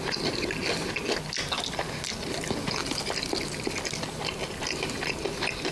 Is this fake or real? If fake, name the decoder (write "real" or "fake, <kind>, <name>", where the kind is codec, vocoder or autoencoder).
real